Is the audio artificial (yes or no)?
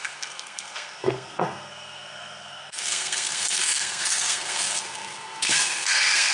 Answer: yes